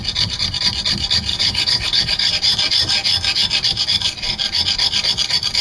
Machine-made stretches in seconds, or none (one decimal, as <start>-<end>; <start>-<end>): 1.3-2.3